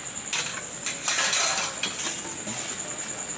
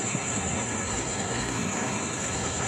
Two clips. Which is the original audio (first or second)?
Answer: first